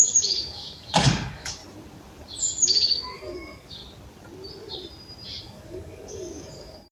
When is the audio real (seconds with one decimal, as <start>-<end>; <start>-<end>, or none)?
1.6-2.4; 3.8-5.4